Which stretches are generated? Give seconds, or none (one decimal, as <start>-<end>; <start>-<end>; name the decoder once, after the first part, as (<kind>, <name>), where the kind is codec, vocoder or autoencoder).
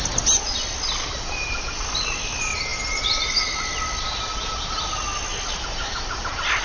none